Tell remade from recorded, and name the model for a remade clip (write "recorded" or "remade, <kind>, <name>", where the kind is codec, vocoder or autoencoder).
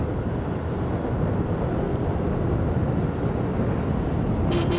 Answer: recorded